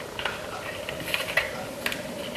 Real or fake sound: real